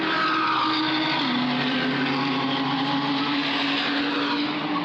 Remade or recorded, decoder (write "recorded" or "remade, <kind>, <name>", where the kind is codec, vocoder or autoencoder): recorded